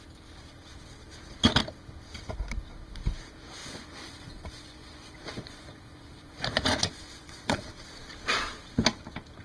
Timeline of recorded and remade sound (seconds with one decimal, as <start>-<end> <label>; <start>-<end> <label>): 0.0-3.6 recorded; 3.6-7.7 remade; 7.7-9.4 recorded